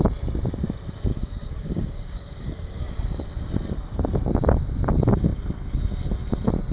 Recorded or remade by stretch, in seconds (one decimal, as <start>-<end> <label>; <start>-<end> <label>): 0.0-1.1 recorded; 1.1-2.8 remade; 2.8-6.7 recorded